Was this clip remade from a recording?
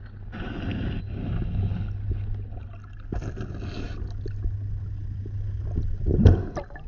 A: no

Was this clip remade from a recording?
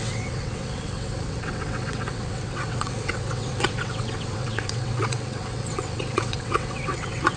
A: yes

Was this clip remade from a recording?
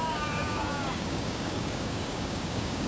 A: yes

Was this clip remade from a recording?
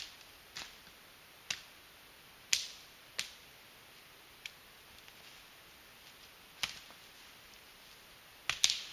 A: no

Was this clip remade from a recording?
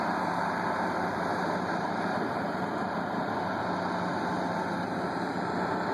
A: yes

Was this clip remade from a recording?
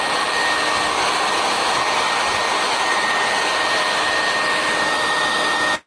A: no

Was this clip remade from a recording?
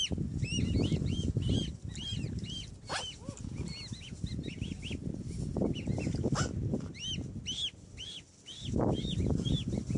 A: no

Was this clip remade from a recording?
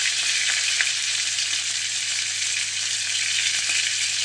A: no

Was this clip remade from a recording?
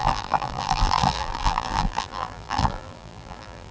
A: yes